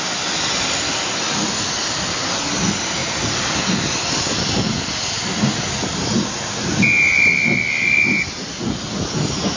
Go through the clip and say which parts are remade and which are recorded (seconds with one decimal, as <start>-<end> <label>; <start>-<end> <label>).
0.0-9.6 recorded